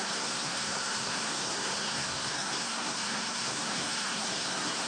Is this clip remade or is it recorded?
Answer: remade